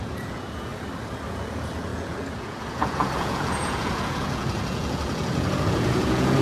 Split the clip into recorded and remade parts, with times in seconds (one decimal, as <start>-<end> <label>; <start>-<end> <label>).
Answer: 0.0-0.7 remade; 0.7-1.3 recorded; 1.3-6.4 remade